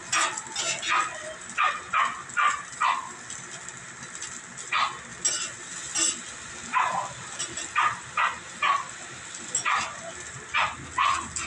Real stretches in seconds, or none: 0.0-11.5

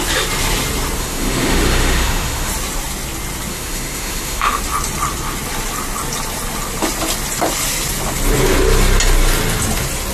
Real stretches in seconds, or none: 0.0-1.0; 2.5-3.5; 4.6-10.1

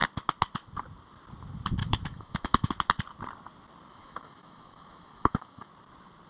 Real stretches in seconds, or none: 0.0-1.8; 2.7-3.9; 5.7-6.3